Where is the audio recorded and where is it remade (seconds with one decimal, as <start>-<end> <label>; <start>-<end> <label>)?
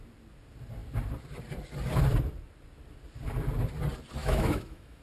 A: 0.0-4.2 recorded; 4.2-5.0 remade